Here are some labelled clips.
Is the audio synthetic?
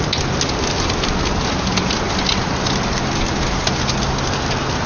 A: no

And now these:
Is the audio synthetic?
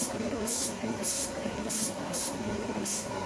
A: yes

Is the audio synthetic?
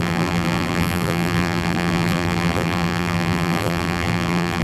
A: yes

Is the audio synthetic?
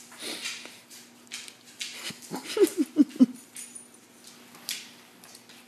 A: no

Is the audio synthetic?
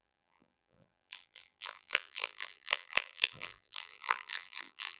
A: yes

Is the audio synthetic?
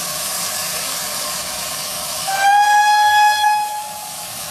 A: yes